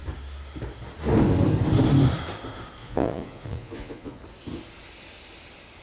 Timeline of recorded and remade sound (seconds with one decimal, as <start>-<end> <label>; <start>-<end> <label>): 0.0-2.8 recorded; 2.8-4.2 remade; 4.2-5.8 recorded